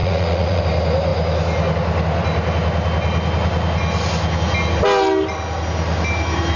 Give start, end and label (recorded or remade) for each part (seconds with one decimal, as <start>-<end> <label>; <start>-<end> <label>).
0.0-0.6 remade; 0.6-6.6 recorded